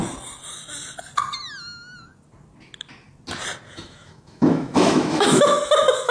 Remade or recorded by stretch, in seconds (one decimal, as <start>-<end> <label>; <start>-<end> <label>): 0.0-3.7 recorded; 3.7-6.1 remade